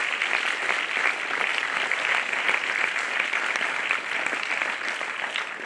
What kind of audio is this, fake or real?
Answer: real